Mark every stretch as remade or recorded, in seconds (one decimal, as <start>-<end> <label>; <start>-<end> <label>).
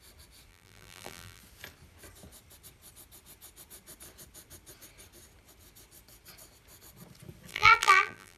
0.0-0.5 recorded; 0.5-1.4 remade; 1.4-7.5 recorded; 7.5-8.4 remade